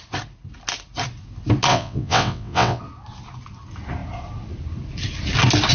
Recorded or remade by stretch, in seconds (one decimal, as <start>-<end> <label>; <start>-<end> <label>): 0.0-1.7 recorded; 1.7-2.8 remade; 2.8-5.7 recorded